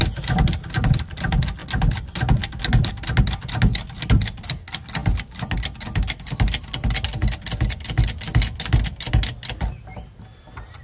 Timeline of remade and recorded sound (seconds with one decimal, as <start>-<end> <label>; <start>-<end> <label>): 0.0-10.8 recorded